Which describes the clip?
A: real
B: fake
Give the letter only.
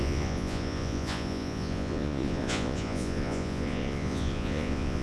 B